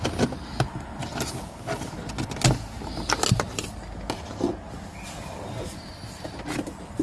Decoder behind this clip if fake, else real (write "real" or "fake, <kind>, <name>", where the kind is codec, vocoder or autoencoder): real